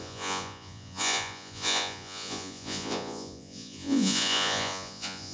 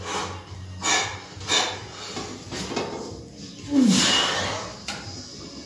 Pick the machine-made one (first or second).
first